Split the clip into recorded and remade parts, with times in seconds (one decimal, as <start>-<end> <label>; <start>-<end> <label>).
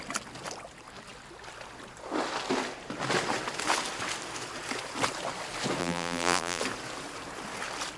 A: 0.0-5.8 recorded; 5.8-6.6 remade; 6.6-8.0 recorded